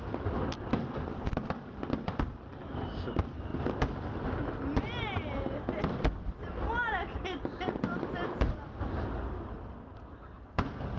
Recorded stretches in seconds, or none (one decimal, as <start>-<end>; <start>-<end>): 0.0-11.0

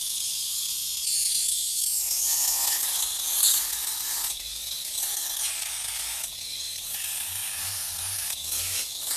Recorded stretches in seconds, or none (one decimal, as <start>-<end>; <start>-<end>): 0.7-2.7

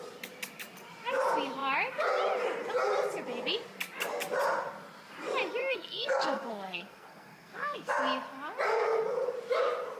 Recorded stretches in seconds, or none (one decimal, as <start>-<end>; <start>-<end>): 0.0-5.6; 7.9-10.0

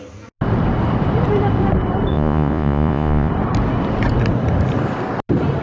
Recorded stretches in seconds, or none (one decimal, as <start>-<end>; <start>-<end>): 0.0-2.1; 3.3-5.6